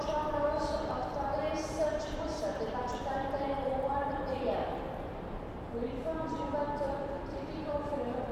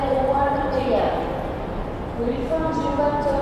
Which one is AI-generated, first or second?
first